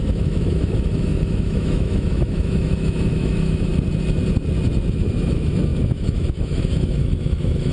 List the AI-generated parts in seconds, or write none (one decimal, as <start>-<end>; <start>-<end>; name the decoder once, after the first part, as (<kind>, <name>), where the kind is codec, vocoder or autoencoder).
0.0-3.7 (autoencoder, DAC-VAE); 4.9-7.7